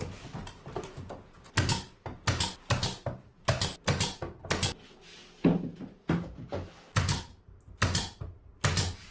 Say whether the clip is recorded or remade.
recorded